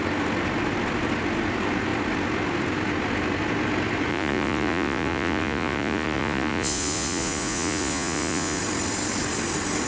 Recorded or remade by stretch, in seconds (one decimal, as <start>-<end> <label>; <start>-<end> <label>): 0.0-4.1 recorded; 4.1-8.6 remade; 8.6-9.9 recorded